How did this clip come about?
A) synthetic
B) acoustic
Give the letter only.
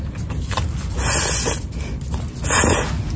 B